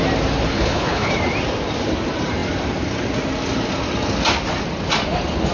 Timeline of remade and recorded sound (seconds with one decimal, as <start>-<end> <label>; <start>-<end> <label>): 0.0-0.5 recorded; 0.5-1.1 remade; 1.1-5.5 recorded